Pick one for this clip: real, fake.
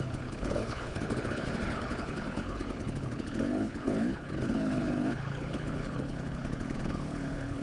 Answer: fake